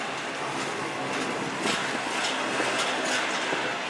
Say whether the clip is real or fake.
real